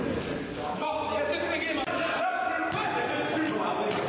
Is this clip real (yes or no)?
yes